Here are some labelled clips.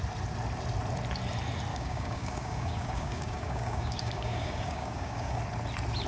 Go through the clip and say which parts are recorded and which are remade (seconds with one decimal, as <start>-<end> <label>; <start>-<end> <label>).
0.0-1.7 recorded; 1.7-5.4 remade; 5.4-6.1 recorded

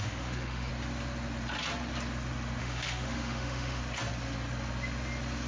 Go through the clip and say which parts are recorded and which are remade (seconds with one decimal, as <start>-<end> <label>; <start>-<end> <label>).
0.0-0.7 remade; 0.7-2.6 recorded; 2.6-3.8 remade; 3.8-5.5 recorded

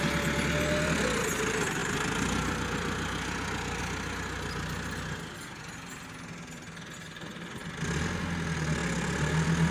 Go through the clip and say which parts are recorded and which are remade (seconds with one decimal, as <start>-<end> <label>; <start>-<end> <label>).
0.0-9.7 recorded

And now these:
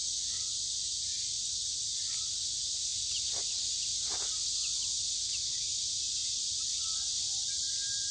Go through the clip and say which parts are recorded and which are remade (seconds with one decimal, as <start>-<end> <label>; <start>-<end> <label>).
0.0-2.9 remade; 2.9-5.3 recorded; 5.3-8.1 remade

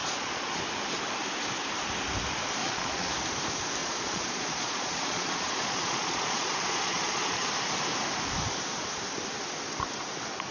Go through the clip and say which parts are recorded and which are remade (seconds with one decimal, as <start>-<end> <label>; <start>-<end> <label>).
0.0-0.6 remade; 0.6-2.6 recorded; 2.6-3.1 remade; 3.1-3.8 recorded; 3.8-7.5 remade; 7.5-10.5 recorded

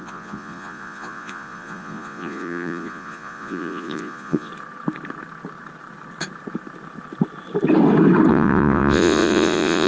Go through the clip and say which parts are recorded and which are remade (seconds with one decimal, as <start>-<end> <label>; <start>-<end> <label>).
0.0-4.5 remade; 4.5-8.3 recorded; 8.3-9.9 remade

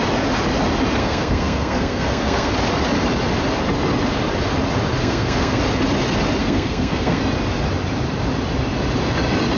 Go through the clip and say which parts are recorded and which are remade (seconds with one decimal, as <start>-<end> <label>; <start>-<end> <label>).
0.0-1.0 recorded; 1.0-2.5 remade; 2.5-5.0 recorded; 5.0-5.6 remade; 5.6-6.4 recorded; 6.4-7.2 remade; 7.2-9.6 recorded